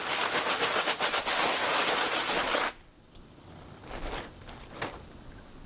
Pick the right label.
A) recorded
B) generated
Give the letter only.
A